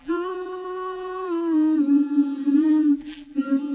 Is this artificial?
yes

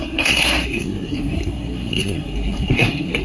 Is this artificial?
yes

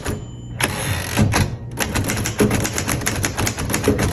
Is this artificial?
no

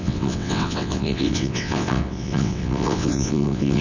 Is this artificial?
yes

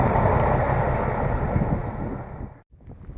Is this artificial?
no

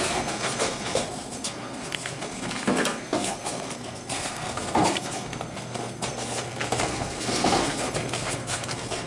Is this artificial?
yes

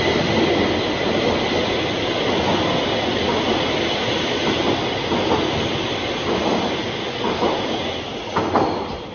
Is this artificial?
no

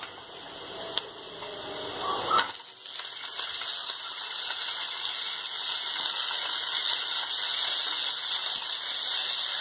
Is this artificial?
no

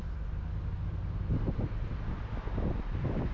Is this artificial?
no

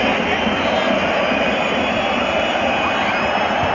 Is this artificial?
yes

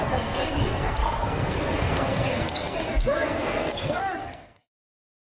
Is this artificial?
yes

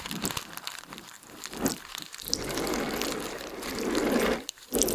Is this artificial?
no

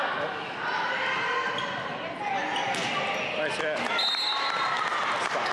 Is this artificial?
no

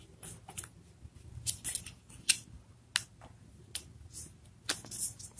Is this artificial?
no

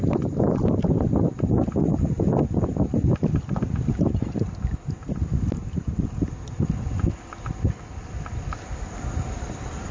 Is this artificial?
no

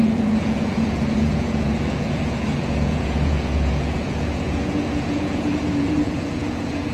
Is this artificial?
yes